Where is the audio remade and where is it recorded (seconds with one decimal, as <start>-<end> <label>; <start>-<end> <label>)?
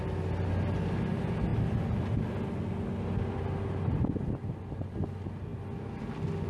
0.0-6.5 recorded